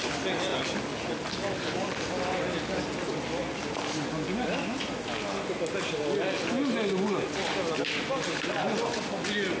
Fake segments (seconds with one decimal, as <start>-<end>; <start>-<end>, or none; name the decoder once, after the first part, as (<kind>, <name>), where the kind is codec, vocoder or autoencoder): none